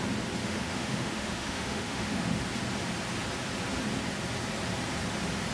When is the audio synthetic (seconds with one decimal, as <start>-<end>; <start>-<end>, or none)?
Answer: 0.4-2.4